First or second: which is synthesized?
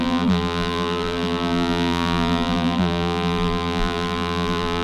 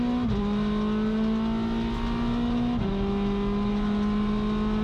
first